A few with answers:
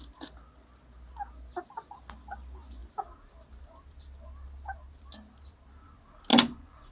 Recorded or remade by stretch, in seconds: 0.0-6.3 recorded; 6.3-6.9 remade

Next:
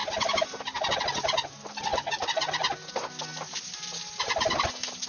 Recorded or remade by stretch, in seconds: 0.0-5.1 recorded

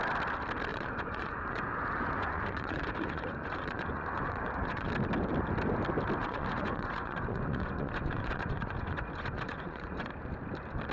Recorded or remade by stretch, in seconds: 0.0-0.7 recorded; 0.7-4.9 remade; 4.9-6.2 recorded; 6.2-10.1 remade; 10.1-10.9 recorded

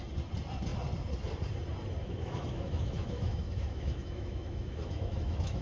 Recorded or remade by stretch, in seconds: 0.0-2.0 recorded; 2.0-5.6 remade

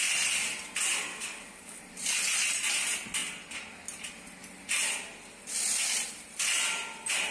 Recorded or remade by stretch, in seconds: 0.0-1.1 recorded; 1.1-1.8 remade; 1.8-7.3 recorded

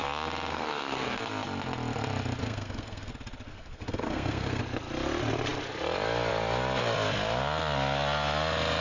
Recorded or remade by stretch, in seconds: 0.0-0.5 recorded; 0.5-1.2 remade; 1.2-2.4 recorded; 2.4-3.1 remade; 3.1-3.5 recorded; 3.5-4.6 remade; 4.6-8.8 recorded

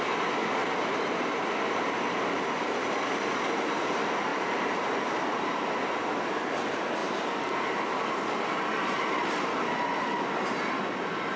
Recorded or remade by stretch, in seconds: 0.0-0.6 recorded; 0.6-1.2 remade; 1.2-4.3 recorded; 4.3-5.0 remade; 5.0-7.0 recorded; 7.0-8.4 remade; 8.4-11.4 recorded